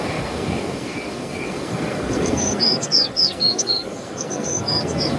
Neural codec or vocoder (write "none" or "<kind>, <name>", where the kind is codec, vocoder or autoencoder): codec, SNAC